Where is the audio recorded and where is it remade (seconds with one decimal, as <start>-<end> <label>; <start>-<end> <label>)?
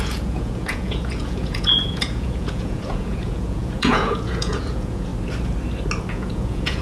0.0-5.1 remade; 5.1-6.1 recorded; 6.1-6.8 remade